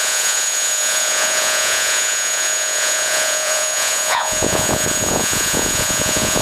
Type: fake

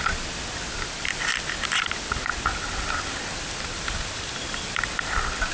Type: real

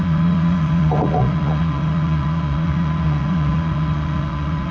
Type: fake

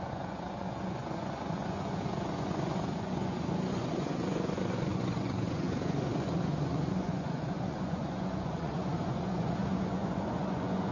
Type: fake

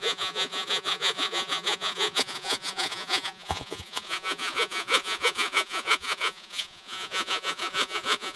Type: fake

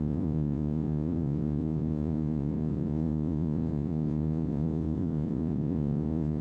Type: fake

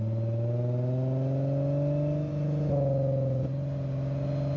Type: real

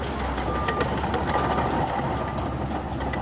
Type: real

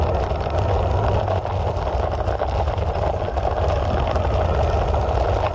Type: real